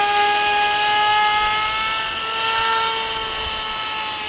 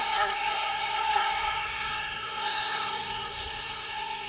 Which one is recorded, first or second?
first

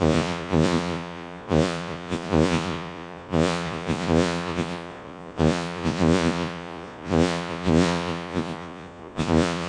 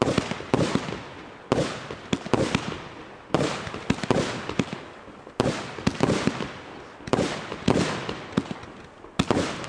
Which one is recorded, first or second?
second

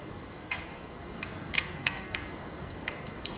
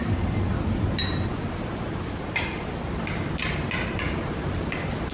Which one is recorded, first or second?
second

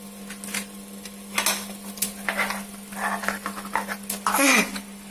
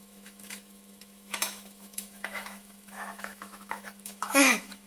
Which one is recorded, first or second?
first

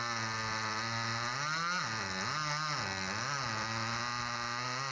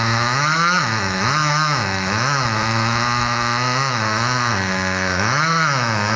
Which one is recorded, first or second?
first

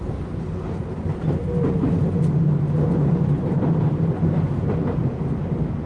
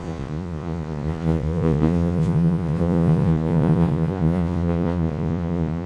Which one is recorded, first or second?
first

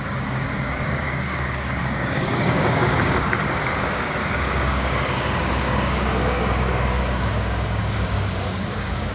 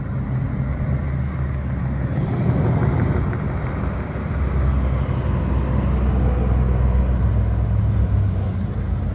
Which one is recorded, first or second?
second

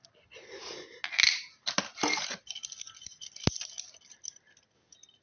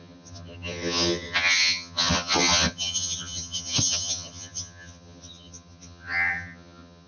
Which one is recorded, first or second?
first